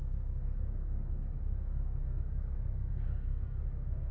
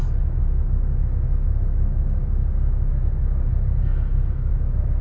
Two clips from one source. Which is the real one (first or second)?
second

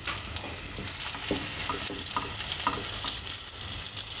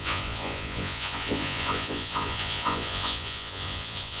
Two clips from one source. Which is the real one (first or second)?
first